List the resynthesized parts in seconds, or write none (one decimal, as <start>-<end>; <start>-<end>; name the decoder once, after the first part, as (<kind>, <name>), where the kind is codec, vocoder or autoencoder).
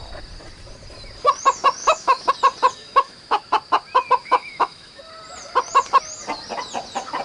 1.8-2.3 (autoencoder, DAC-VAE); 2.8-3.4; 4.2-5.0